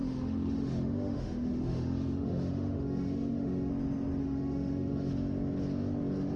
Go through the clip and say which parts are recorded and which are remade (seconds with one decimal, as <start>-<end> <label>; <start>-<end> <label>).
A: 0.0-3.7 remade; 3.7-4.2 recorded; 4.2-5.1 remade; 5.1-6.4 recorded